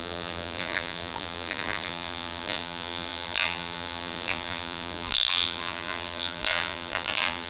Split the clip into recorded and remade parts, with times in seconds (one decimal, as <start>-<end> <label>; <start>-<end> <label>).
0.0-7.5 remade